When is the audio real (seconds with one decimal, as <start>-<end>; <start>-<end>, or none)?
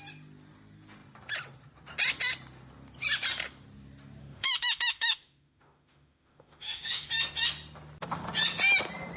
0.0-4.2; 7.1-9.2